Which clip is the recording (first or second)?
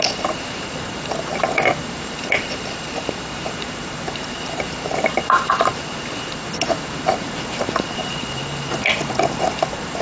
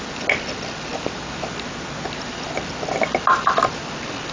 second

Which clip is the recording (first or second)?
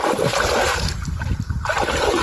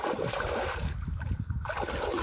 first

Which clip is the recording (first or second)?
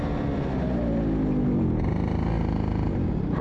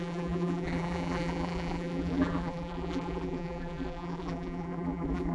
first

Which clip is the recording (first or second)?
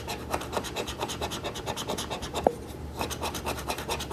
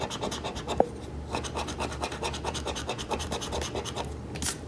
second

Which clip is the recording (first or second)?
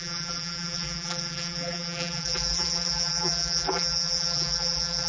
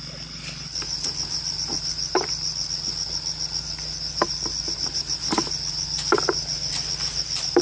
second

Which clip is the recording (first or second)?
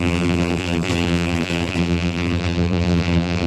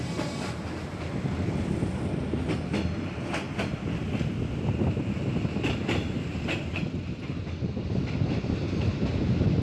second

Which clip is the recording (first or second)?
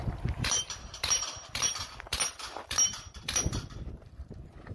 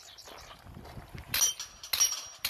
second